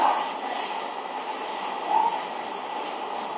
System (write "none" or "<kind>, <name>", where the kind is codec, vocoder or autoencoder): none